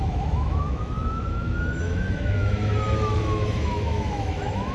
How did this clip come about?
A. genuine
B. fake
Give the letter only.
B